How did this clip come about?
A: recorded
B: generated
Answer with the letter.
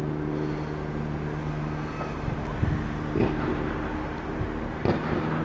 A